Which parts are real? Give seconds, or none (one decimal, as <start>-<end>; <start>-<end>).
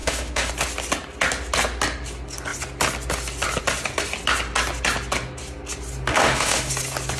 0.5-6.1; 6.7-7.2